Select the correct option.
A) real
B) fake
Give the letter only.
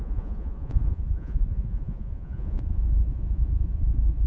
B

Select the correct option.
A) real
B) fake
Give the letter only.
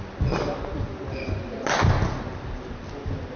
A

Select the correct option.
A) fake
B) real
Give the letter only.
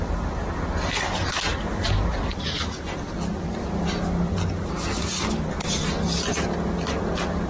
B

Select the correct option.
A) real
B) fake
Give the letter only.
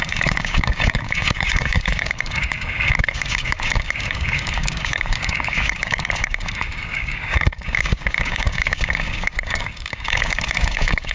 B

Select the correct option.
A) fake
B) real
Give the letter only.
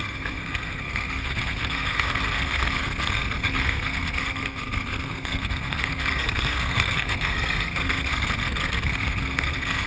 A